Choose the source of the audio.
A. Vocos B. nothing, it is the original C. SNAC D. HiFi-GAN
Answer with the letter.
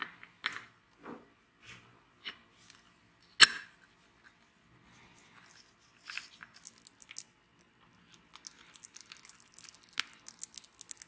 B